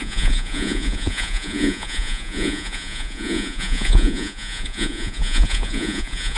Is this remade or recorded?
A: remade